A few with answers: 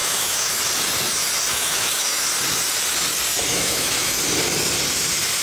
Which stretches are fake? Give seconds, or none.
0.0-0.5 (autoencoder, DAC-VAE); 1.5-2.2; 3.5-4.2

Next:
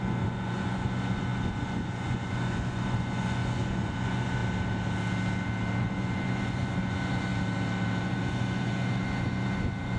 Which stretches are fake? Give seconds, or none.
0.0-4.4 (vocoder, Vocos); 5.8-7.3; 8.0-10.0

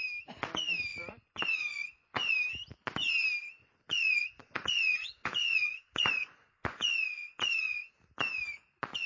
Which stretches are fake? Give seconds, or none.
0.9-2.3 (vocoder, Vocos); 3.6-7.9